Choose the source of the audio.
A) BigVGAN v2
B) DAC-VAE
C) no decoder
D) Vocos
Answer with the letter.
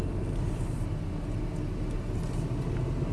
C